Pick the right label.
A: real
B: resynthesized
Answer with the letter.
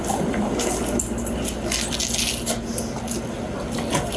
A